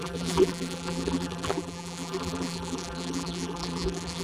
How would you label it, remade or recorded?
remade